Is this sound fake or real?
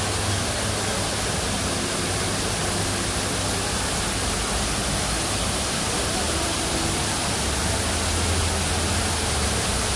real